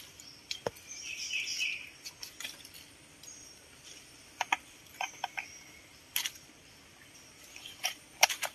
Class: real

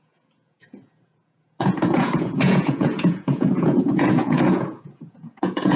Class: fake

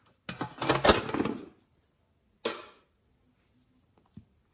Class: real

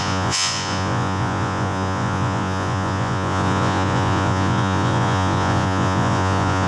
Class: fake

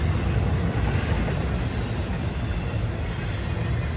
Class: real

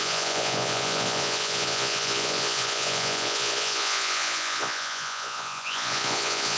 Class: fake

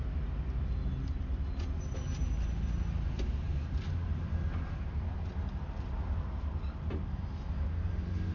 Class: real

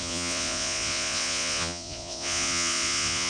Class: fake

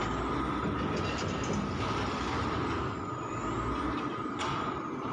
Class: real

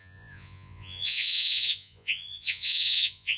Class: fake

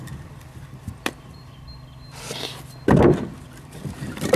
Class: real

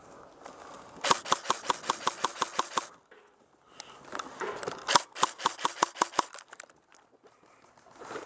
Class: real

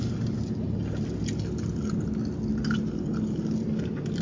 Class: real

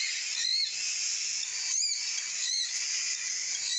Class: real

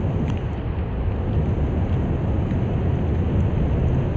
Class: real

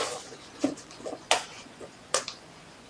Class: fake